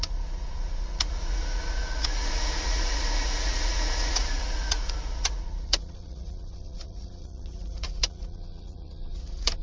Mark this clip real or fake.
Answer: fake